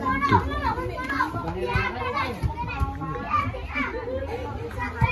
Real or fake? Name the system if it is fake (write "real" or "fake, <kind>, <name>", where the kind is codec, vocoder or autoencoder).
real